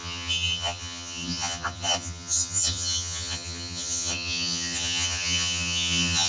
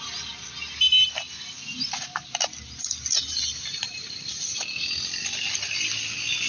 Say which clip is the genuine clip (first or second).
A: second